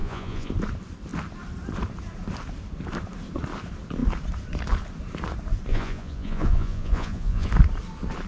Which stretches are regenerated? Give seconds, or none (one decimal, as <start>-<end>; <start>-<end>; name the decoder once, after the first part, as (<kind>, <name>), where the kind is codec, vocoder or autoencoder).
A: 0.0-0.5 (vocoder, Vocos); 5.7-7.5